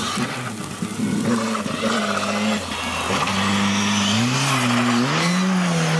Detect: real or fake real